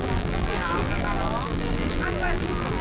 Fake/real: fake